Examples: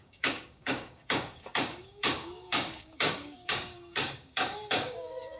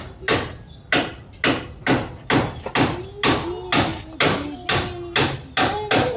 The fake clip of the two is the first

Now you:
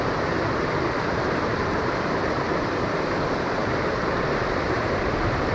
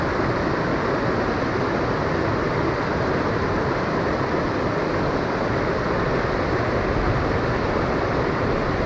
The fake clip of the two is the first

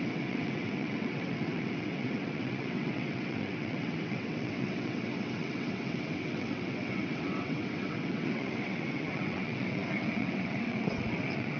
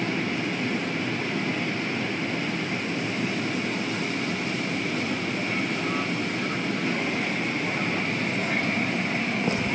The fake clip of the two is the first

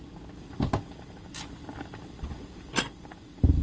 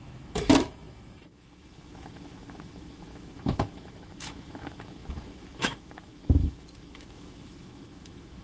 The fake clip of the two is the second